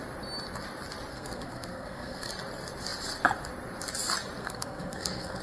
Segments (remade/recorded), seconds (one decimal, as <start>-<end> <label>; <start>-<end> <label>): 0.0-1.1 recorded; 1.1-2.3 remade; 2.3-4.4 recorded; 4.4-5.4 remade